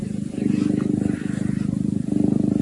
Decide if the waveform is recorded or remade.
recorded